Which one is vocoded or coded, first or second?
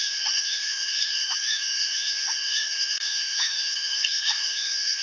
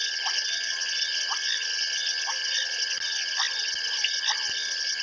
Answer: first